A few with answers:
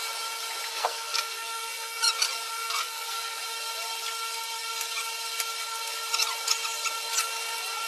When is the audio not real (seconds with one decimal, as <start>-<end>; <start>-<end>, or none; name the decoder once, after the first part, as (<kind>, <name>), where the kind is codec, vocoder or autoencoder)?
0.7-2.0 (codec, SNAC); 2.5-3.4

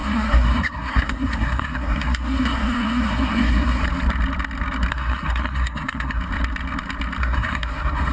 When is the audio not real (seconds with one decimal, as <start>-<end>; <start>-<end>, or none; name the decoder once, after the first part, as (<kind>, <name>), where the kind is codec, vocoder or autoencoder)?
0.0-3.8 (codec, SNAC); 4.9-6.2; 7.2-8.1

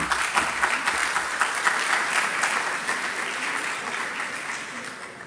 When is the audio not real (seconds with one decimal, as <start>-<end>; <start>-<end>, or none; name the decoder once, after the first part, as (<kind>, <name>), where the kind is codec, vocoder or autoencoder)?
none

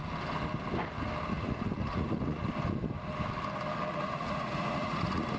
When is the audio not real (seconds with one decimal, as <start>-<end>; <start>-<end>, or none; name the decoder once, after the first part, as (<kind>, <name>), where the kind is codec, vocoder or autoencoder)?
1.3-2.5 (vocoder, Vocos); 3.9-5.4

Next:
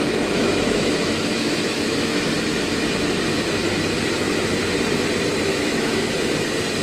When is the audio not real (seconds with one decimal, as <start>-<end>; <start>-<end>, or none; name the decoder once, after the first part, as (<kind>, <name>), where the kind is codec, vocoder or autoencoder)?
0.4-2.2 (autoencoder, DAC-VAE); 5.5-6.1

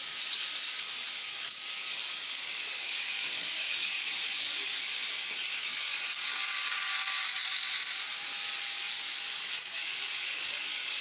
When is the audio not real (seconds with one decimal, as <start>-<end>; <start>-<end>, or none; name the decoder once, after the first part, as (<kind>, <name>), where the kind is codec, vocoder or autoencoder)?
0.0-7.4 (codec, DAC); 8.6-11.0

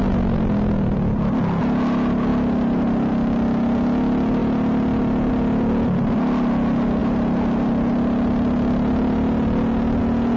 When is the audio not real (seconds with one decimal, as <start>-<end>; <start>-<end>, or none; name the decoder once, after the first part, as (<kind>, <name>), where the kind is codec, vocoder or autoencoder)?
none

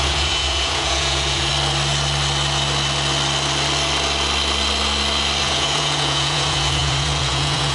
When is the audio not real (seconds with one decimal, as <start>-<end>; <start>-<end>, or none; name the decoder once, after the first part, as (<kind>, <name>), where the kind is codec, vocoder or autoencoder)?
0.0-1.5 (vocoder, Vocos); 5.4-7.7